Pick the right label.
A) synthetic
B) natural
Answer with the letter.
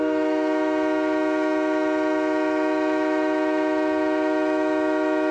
A